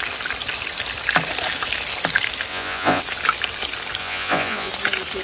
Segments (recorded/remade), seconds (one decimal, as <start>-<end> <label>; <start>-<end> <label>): 0.0-2.5 recorded; 2.5-3.0 remade; 3.0-4.0 recorded; 4.0-4.7 remade; 4.7-5.2 recorded